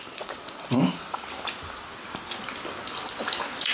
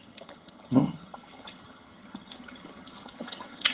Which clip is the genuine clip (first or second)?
first